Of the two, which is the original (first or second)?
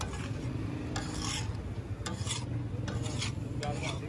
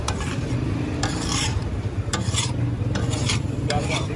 first